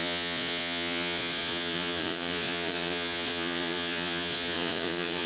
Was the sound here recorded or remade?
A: remade